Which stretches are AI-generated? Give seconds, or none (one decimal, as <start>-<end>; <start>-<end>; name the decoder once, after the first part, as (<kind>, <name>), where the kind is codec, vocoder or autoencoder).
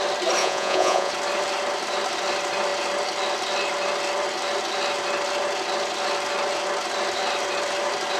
0.4-1.1 (vocoder, Vocos)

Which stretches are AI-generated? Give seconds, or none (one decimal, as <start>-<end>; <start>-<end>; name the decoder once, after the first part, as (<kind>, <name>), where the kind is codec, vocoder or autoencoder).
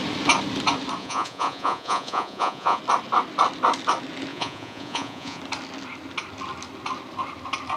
1.0-2.8 (vocoder, Vocos); 4.3-5.4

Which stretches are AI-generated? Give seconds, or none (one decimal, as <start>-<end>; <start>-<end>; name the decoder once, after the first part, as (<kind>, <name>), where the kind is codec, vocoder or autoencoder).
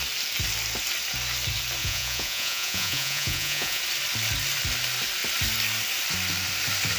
1.8-3.8 (vocoder, Vocos)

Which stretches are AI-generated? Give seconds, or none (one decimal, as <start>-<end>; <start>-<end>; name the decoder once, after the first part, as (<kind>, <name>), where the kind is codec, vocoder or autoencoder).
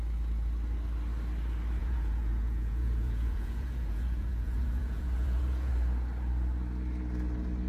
1.8-5.7 (vocoder, Vocos)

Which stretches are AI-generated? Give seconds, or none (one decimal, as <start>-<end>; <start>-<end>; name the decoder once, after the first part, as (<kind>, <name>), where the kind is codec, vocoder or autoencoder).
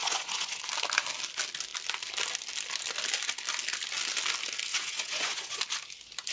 0.0-0.6 (vocoder, Vocos); 4.7-5.6